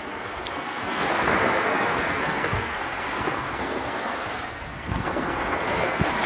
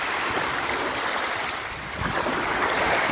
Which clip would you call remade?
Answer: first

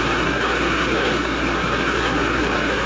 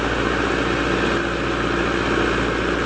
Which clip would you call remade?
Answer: first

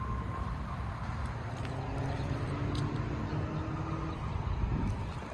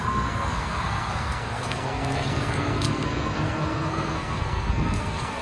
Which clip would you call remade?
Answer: second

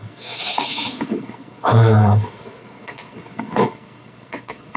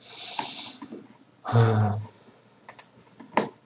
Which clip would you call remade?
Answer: first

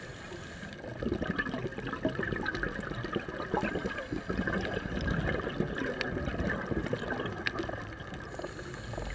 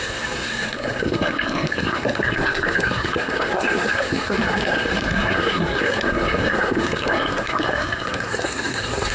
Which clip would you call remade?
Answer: second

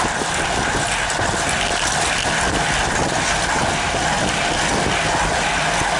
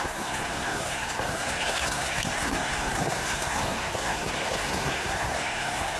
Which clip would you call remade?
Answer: second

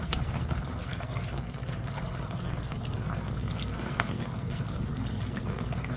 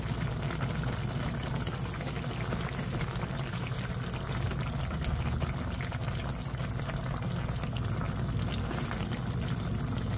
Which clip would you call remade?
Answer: first